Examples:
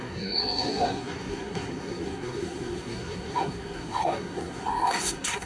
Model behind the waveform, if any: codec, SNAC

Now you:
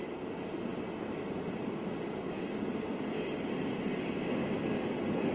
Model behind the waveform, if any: none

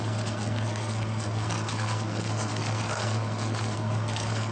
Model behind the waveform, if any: codec, SNAC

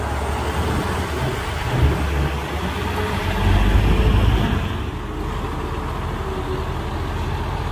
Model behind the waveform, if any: none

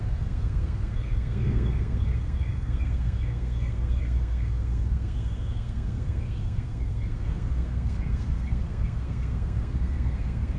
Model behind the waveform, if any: codec, SNAC